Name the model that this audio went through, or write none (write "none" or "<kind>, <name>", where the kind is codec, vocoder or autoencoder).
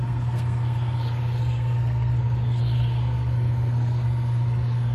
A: codec, SNAC